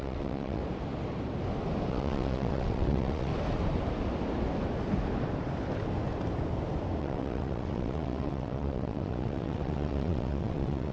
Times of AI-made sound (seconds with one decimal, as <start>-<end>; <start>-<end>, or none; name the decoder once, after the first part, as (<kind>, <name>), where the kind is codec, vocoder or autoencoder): 0.0-0.6 (vocoder, WaveNeXt); 1.9-3.3; 7.0-10.9